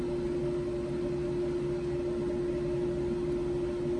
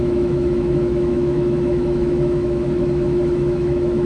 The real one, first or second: first